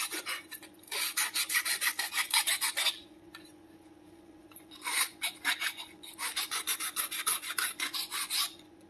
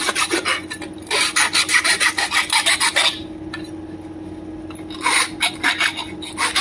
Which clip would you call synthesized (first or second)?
first